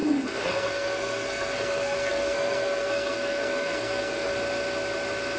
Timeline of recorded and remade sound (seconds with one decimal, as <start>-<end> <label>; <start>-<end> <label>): 0.0-4.3 remade; 4.3-5.4 recorded

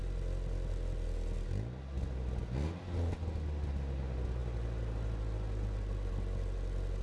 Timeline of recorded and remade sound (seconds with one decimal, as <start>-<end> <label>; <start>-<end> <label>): 0.0-7.0 recorded

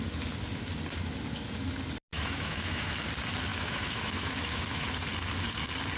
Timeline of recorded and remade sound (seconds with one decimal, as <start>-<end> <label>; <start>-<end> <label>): 0.0-2.1 recorded; 2.1-2.9 remade; 2.9-3.5 recorded; 3.5-4.9 remade; 4.9-6.0 recorded

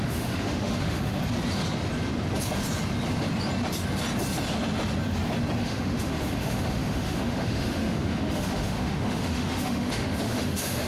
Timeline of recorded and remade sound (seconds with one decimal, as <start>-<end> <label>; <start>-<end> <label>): 0.0-1.2 remade; 1.2-5.6 recorded; 5.6-10.9 remade

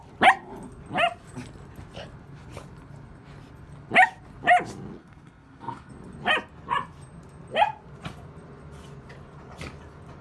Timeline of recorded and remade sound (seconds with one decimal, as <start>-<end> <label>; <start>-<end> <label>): 0.0-5.0 recorded; 5.0-5.9 remade; 5.9-10.2 recorded